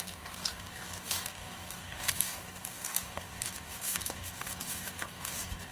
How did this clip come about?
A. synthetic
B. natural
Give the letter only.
A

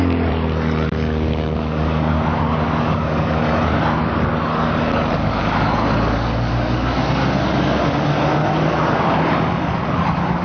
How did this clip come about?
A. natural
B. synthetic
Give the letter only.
B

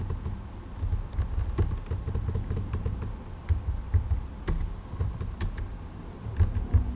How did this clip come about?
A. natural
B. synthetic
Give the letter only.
A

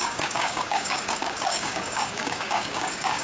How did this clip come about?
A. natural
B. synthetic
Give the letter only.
B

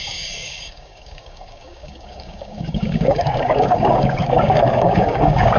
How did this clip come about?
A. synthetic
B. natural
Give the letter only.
A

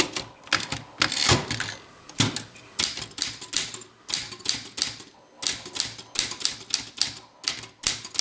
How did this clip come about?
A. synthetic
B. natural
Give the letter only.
B